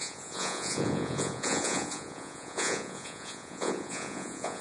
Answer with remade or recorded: remade